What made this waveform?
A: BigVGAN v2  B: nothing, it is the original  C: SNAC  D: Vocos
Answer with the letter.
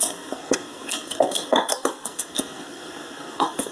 C